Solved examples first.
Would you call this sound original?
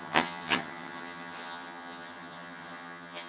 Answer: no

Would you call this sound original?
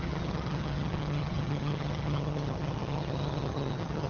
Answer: no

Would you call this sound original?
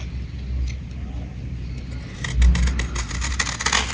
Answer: yes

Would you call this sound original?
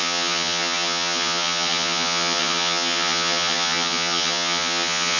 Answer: no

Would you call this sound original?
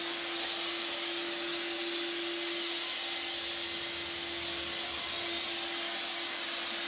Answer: yes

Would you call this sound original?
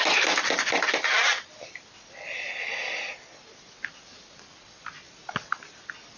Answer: yes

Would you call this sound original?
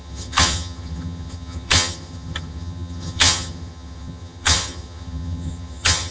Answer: no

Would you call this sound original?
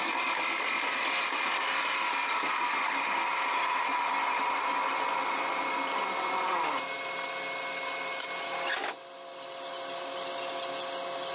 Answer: yes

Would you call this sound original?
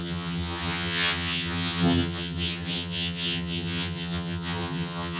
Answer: no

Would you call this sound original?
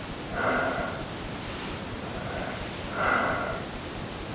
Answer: yes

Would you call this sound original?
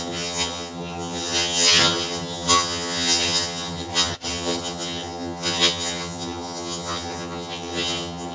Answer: no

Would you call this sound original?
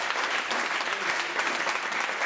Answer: yes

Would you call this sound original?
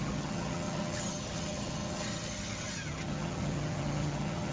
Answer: no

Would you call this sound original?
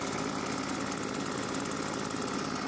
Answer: yes